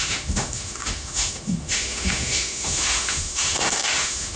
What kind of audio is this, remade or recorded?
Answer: remade